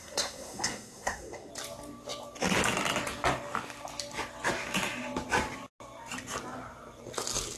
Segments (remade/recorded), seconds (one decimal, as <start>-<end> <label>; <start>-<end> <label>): 0.0-1.5 remade; 1.5-7.6 recorded